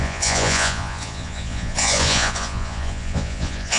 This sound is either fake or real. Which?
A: fake